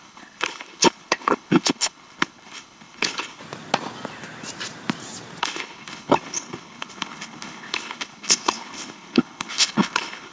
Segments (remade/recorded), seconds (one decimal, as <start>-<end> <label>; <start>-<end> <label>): 0.0-3.4 remade; 3.4-5.4 recorded; 5.4-10.3 remade